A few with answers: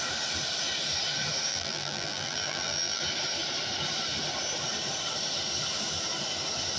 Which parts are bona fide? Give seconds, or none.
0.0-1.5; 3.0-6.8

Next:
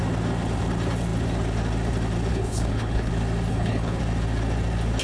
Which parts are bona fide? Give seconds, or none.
0.0-2.3; 3.1-3.5; 4.0-5.0

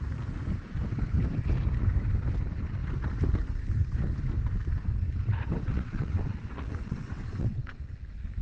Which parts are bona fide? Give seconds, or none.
0.0-5.6; 7.8-8.4

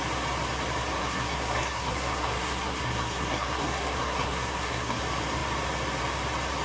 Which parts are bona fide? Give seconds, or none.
0.0-1.0; 5.0-6.6

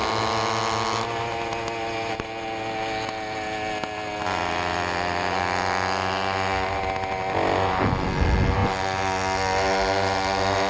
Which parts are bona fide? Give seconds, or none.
0.0-10.7